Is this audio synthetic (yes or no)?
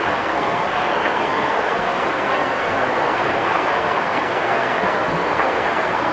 yes